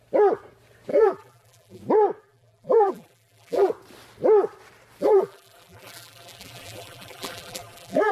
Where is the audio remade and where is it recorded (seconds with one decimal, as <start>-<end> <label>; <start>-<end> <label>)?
0.0-0.9 recorded; 0.9-1.8 remade; 1.8-2.2 recorded; 2.2-3.7 remade; 3.7-5.0 recorded; 5.0-8.1 remade